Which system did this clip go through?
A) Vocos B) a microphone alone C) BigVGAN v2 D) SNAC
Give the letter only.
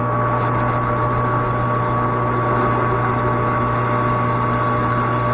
B